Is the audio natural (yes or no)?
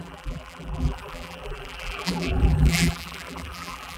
no